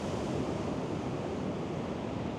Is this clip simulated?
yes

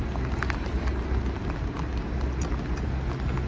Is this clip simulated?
no